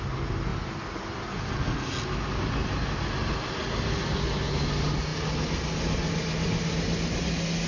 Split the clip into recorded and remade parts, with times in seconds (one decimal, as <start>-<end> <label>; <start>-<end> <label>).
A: 0.0-7.7 recorded